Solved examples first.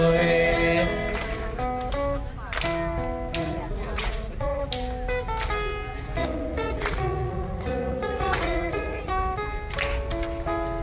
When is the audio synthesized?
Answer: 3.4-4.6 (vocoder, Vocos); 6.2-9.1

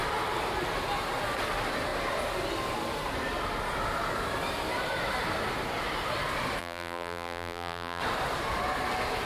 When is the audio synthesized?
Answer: 6.6-8.0 (vocoder, BigVGAN v2)

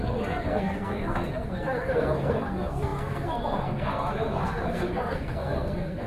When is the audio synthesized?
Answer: 0.0-6.1 (codec, SNAC)

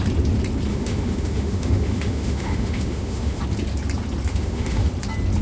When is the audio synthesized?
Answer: 0.7-3.4 (autoencoder, DAC-VAE); 4.3-4.9

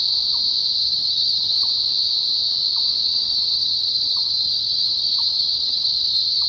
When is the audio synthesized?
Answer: 0.8-1.7 (vocoder, HiFi-GAN); 3.1-6.5

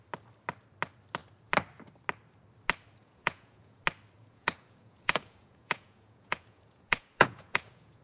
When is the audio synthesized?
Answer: 3.0-3.8 (vocoder, Vocos); 4.2-8.0